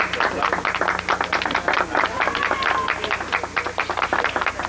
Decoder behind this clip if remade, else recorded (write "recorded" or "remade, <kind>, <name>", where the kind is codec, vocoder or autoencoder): recorded